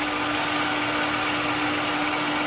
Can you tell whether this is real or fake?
real